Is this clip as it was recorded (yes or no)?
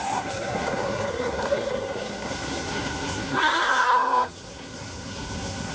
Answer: no